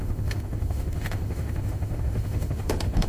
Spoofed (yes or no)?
yes